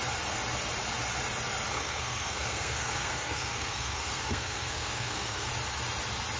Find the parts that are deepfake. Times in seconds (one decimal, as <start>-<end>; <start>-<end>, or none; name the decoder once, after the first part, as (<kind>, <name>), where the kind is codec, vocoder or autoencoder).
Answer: 1.7-5.5 (codec, SNAC)